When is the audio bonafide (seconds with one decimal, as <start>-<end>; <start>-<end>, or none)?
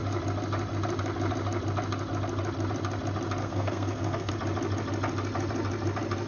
0.0-3.4; 4.3-6.3